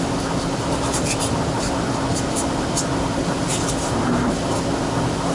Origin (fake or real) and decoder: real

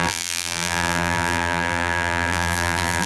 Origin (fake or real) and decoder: fake, vocoder, BigVGAN v2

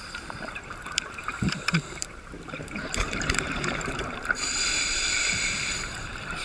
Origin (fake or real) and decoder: fake, vocoder, BigVGAN v2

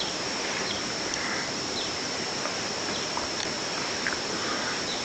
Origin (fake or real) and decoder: fake, vocoder, BigVGAN v2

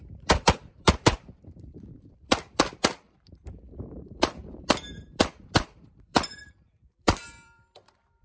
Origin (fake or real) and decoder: fake, vocoder, BigVGAN v2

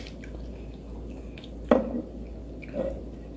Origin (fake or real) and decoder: real